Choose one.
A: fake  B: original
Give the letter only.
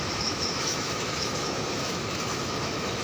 A